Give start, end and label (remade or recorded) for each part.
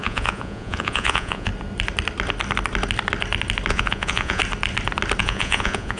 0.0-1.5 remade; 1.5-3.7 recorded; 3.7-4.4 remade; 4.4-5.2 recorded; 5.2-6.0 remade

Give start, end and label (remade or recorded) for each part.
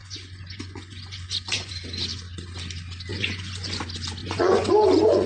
0.0-1.7 remade; 1.7-3.1 recorded; 3.1-3.8 remade; 3.8-4.2 recorded; 4.2-5.3 remade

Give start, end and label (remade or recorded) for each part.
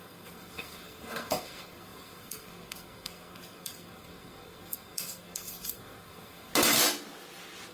0.0-6.5 remade; 6.5-7.7 recorded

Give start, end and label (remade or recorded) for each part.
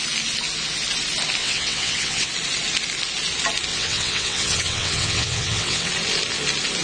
0.0-1.4 recorded; 1.4-2.3 remade; 2.3-3.7 recorded; 3.7-5.9 remade; 5.9-6.8 recorded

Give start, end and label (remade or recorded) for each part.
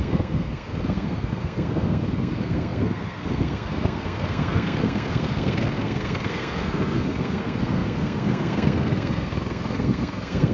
0.0-10.5 remade